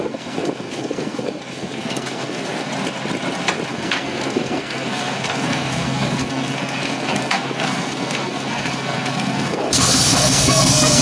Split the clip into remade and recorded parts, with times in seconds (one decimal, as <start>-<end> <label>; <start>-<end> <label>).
0.0-2.7 remade; 2.7-3.7 recorded; 3.7-11.0 remade